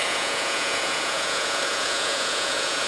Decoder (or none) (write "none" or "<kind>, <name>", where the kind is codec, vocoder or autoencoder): vocoder, Vocos